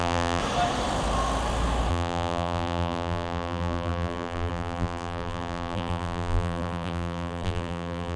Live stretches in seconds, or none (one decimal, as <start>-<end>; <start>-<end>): 0.4-1.9